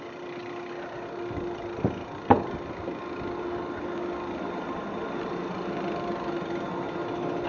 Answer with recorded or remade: remade